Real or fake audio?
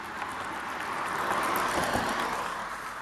real